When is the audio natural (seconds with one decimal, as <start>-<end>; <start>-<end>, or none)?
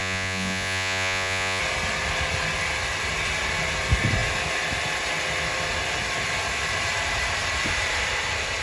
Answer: 1.6-8.6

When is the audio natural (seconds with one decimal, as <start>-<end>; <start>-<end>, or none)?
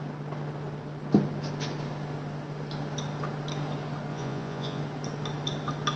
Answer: 0.0-4.1; 4.8-6.0